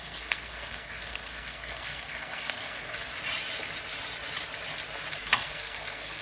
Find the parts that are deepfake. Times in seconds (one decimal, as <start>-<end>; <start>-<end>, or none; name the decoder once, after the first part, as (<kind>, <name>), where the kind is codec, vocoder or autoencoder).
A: 0.0-3.1 (codec, SNAC); 5.1-6.2